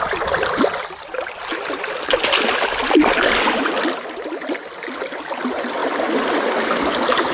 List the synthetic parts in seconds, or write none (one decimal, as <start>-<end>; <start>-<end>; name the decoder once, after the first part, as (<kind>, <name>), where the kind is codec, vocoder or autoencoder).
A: none